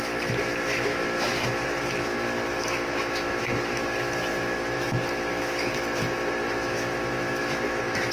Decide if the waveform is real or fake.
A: fake